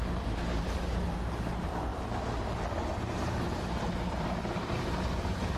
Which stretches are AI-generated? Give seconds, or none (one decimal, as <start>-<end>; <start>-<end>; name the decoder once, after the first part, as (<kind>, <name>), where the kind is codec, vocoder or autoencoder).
0.0-5.6 (vocoder, BigVGAN v2)